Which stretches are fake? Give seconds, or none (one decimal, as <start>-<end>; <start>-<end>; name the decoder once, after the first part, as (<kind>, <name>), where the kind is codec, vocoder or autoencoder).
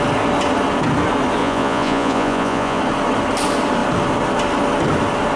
1.4-2.8 (vocoder, Vocos)